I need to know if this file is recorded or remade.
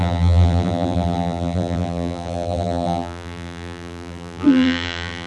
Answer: remade